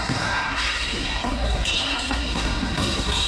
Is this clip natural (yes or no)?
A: no